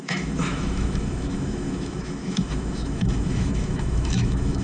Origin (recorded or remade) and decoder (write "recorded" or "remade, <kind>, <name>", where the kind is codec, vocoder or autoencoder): remade, autoencoder, DAC-VAE